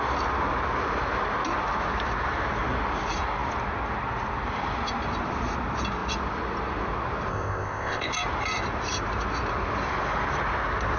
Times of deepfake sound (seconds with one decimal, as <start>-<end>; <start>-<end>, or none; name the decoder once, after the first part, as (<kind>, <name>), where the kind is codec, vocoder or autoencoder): 7.3-8.1 (codec, ZipCodec)